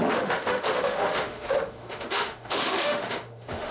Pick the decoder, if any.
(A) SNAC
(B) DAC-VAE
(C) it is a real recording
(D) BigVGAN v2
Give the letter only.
B